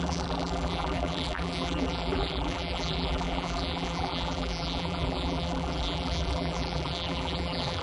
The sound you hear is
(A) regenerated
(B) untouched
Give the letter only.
A